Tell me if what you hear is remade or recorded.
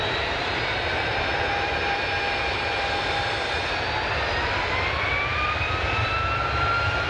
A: remade